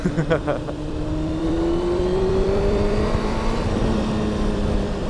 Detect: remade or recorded remade